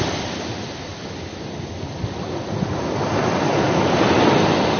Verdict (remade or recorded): recorded